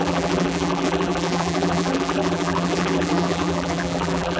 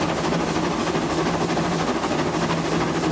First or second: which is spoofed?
first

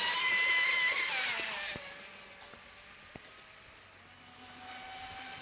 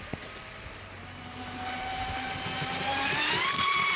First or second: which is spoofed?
second